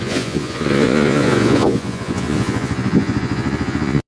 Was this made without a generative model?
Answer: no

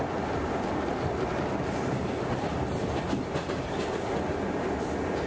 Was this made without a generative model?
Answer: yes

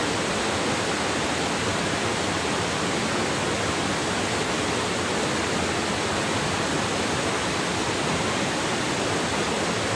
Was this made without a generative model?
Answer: yes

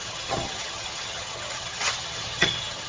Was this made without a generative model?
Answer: no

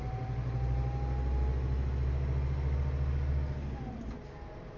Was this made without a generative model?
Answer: yes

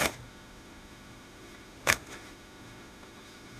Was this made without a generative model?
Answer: no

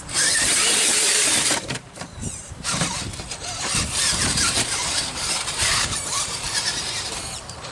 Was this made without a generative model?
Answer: no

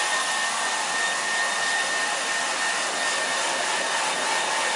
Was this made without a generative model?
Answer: yes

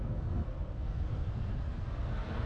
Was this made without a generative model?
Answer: no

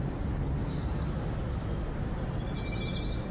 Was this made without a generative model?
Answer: yes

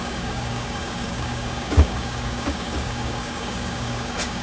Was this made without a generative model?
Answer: no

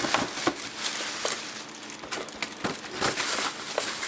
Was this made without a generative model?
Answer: yes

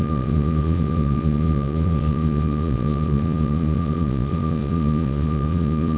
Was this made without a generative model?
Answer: no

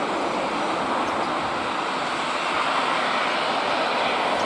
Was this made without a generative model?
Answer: yes